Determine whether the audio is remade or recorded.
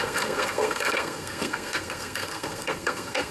remade